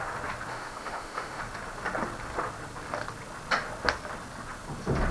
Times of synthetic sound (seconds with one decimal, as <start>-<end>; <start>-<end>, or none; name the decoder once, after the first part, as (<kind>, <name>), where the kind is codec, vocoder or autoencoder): 0.5-1.4 (autoencoder, DAC-VAE)